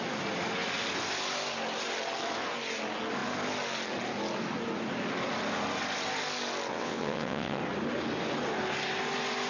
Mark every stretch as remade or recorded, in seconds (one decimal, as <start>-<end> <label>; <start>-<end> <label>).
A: 0.0-6.7 recorded; 6.7-7.6 remade; 7.6-9.5 recorded